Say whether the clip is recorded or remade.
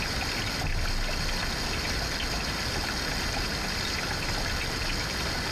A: recorded